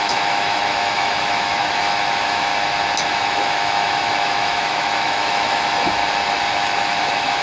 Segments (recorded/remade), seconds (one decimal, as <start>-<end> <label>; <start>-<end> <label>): 0.0-2.5 remade; 2.5-3.1 recorded; 3.1-6.0 remade; 6.0-6.6 recorded; 6.6-7.4 remade